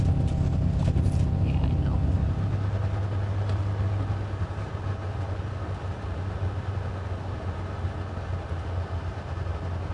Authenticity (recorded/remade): recorded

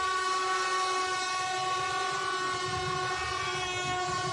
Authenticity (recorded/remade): recorded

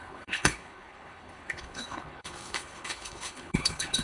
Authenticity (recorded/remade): remade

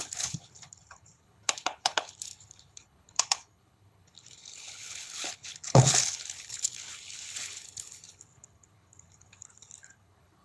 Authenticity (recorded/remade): remade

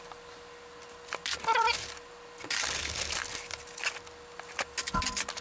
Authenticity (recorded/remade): recorded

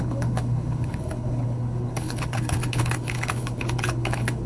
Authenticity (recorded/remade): remade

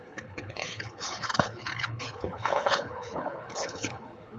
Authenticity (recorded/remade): remade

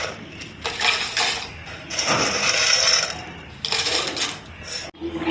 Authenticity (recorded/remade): recorded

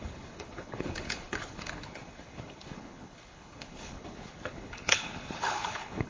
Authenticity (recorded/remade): remade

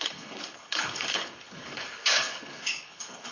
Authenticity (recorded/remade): remade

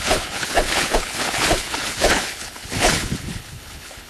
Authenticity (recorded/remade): remade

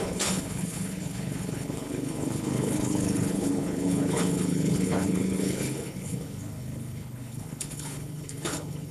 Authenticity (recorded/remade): remade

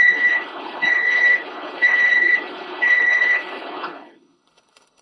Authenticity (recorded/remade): remade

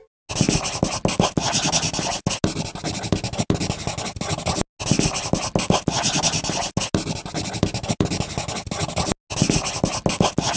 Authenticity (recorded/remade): recorded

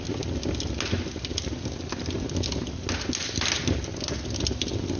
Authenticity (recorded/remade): recorded